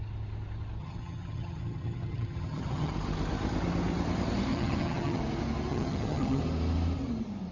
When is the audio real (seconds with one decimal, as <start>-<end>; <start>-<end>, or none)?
0.0-0.8; 2.9-4.5; 5.2-5.7; 6.4-7.5

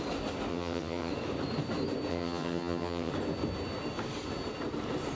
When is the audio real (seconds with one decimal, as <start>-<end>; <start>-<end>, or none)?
0.0-0.5; 1.1-2.1; 3.1-5.2

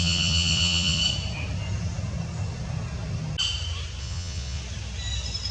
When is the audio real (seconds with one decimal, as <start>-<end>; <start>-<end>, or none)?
1.0-4.0; 4.6-5.5

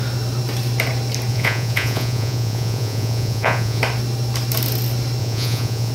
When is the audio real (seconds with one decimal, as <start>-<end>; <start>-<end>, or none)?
0.0-1.3; 3.8-5.2